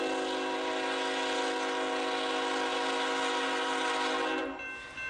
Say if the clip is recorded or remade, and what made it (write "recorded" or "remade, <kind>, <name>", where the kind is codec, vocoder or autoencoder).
recorded